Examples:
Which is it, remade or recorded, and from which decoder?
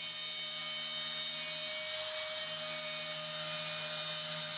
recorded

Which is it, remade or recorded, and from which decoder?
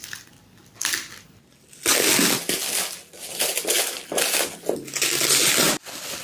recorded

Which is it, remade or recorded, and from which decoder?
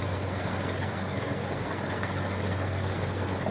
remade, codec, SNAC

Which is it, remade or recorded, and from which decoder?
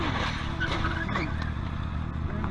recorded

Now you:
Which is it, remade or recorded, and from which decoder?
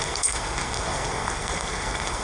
remade, codec, SNAC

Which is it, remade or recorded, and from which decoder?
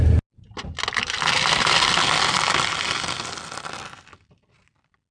recorded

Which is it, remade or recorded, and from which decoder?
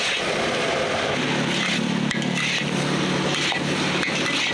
recorded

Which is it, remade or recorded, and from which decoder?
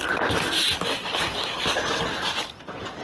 recorded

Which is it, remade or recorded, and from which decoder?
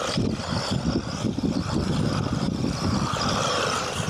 recorded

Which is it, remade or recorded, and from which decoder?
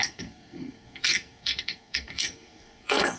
remade, codec, SNAC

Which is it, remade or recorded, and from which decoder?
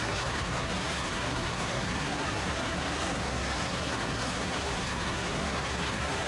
remade, codec, SNAC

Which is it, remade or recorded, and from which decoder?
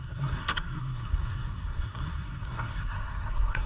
remade, codec, SNAC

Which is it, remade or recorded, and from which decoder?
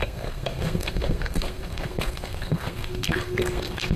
remade, codec, SNAC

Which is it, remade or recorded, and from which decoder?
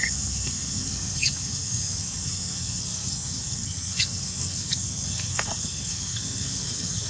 remade, codec, SNAC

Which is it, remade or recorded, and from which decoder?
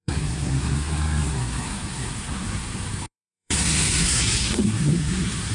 remade, codec, SNAC